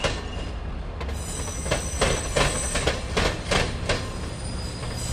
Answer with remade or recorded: recorded